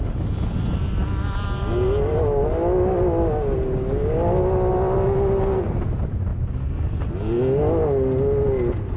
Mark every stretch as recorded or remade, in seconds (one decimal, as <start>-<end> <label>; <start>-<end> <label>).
0.0-9.0 recorded